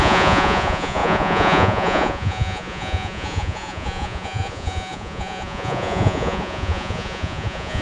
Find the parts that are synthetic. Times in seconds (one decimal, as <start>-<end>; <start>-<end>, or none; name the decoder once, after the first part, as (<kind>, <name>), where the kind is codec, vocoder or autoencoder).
0.0-7.8 (vocoder, Vocos)